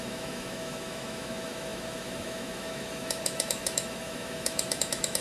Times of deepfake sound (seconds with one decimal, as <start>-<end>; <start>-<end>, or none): 0.0-5.2